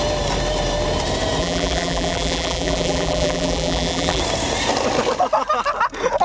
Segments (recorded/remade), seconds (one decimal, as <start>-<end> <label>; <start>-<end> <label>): 0.0-1.4 recorded; 1.4-4.2 remade; 4.2-6.2 recorded